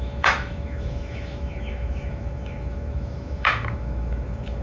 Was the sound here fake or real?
fake